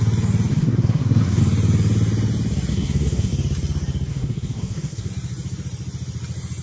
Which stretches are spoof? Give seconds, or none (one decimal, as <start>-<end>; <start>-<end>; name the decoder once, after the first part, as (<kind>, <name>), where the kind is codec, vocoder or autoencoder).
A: 0.5-1.4 (codec, SNAC); 2.7-3.3; 4.1-5.1